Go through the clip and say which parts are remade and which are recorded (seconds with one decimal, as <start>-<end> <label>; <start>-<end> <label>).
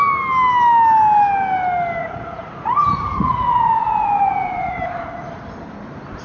0.0-2.0 recorded; 2.0-4.8 remade; 4.8-6.2 recorded